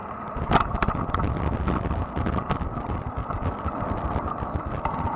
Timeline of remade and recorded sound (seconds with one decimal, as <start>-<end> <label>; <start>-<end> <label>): 0.0-3.1 remade; 3.1-5.2 recorded